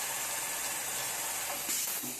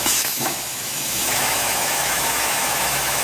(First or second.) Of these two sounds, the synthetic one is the second